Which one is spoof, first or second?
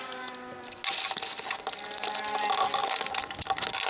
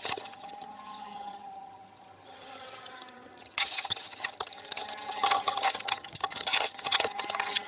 second